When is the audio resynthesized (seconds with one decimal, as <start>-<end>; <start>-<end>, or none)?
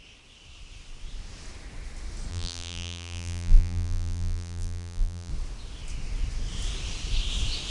2.3-5.3